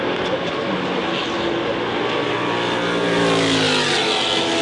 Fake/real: real